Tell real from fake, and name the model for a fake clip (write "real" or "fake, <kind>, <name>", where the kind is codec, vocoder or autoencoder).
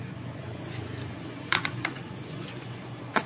fake, vocoder, Vocos